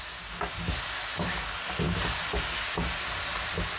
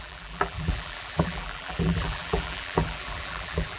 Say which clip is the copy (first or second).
second